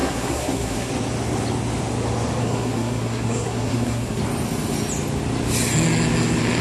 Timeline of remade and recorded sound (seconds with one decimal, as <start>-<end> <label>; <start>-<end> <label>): 0.0-0.9 remade; 0.9-2.4 recorded; 2.4-4.2 remade; 4.2-6.6 recorded